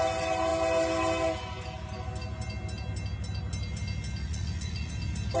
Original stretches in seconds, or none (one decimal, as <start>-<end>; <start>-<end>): 0.0-4.2; 4.9-5.4